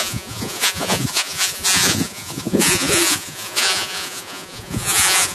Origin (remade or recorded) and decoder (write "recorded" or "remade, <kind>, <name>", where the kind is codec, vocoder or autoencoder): remade, vocoder, Vocos